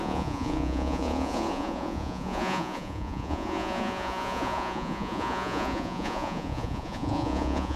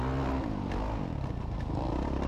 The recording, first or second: second